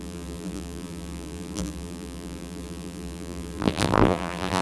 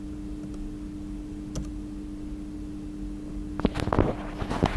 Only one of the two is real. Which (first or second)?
second